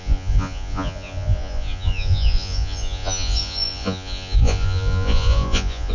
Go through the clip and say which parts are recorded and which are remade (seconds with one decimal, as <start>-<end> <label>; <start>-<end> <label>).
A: 0.0-5.9 remade